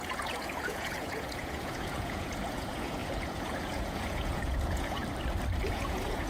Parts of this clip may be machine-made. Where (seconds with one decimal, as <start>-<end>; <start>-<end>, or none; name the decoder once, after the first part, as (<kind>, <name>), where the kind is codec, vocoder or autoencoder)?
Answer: 0.0-5.0 (vocoder, Vocos); 5.7-6.3